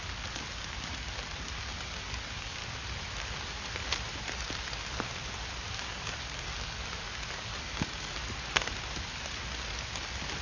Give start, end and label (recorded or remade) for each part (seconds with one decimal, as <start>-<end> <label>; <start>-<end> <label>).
0.0-2.6 remade; 2.6-5.7 recorded; 5.7-8.2 remade; 8.2-10.4 recorded